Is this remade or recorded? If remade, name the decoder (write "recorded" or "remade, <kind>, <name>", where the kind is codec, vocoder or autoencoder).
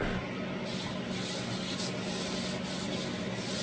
recorded